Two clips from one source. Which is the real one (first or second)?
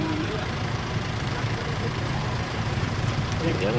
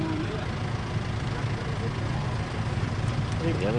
second